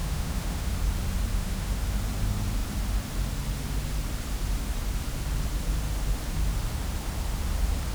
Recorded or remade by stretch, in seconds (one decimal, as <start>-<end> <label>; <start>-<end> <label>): 0.0-0.7 remade; 0.7-1.3 recorded; 1.3-1.8 remade; 1.8-7.9 recorded